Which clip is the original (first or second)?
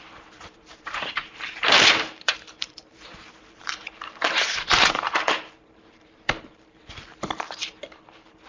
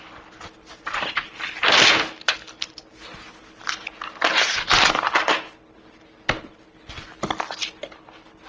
second